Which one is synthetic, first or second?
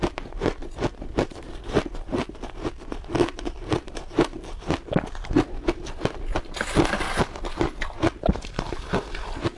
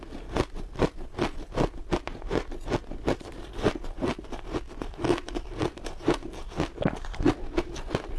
first